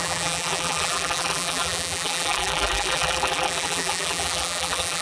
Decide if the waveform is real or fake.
fake